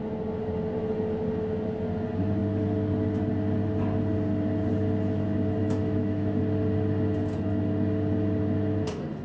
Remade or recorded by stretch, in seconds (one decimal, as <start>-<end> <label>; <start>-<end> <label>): 0.0-5.6 recorded; 5.6-6.4 remade; 6.4-9.2 recorded